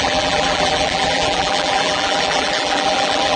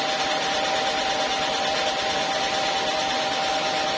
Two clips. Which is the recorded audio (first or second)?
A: second